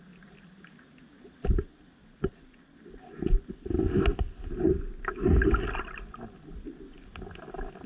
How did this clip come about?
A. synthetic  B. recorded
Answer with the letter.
B